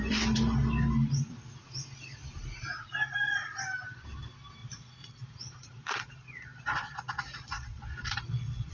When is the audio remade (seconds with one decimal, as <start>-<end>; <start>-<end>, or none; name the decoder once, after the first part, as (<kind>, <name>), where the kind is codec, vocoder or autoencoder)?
4.6-8.7 (vocoder, Vocos)